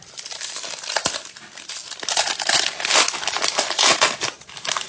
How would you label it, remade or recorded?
recorded